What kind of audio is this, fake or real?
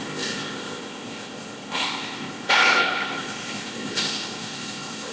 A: fake